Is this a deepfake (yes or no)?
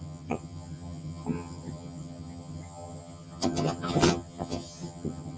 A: yes